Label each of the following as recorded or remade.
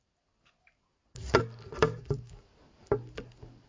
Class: recorded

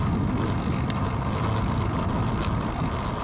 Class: recorded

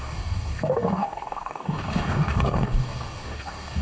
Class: remade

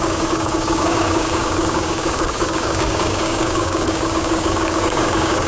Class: remade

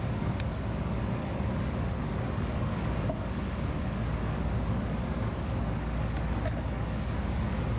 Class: remade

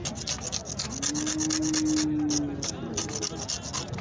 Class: recorded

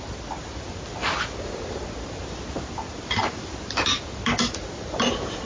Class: recorded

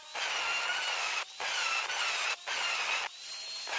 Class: recorded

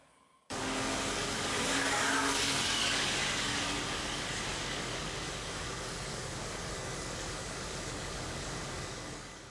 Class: remade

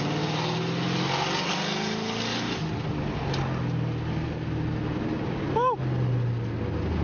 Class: recorded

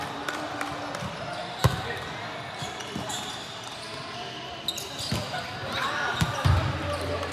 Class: recorded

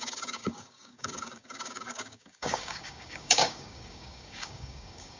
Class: remade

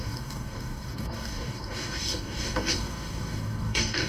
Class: remade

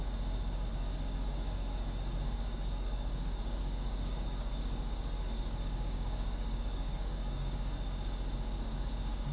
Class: remade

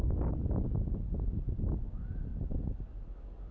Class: recorded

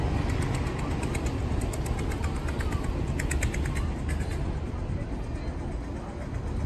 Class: recorded